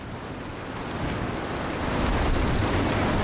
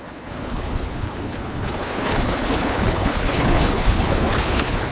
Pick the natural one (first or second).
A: first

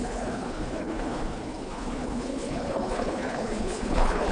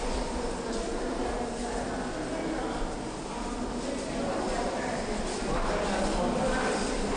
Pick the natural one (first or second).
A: second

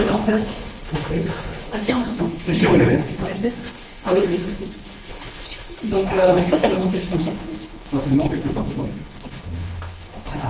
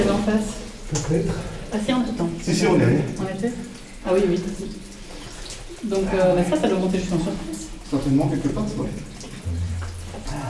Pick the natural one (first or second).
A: second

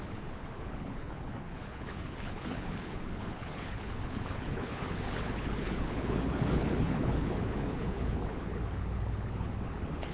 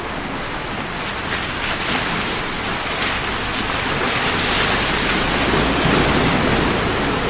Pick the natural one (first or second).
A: second